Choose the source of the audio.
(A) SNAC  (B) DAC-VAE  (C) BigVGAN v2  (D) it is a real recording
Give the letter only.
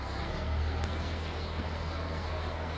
A